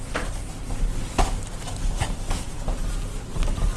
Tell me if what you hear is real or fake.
real